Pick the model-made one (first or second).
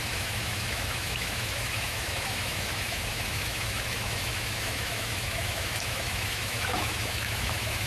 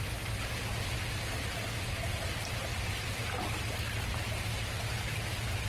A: first